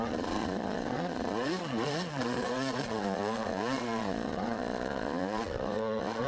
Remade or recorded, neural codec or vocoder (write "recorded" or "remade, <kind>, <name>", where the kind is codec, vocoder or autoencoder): remade, vocoder, Vocos